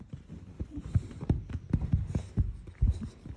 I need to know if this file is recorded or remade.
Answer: recorded